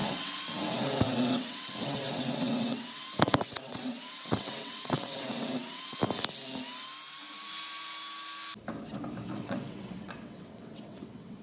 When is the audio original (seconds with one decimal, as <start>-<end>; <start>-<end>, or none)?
6.0-9.3